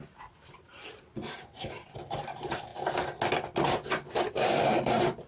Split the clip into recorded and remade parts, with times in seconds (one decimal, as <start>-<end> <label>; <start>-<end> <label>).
0.0-2.7 remade; 2.7-4.3 recorded; 4.3-5.3 remade